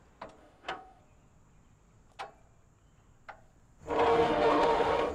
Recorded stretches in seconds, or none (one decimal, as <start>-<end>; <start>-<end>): 0.0-0.4; 1.0-4.1